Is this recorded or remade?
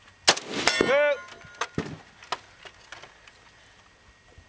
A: recorded